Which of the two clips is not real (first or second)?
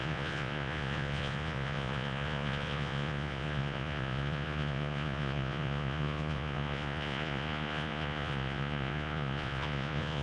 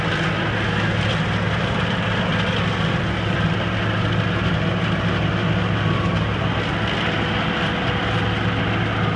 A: first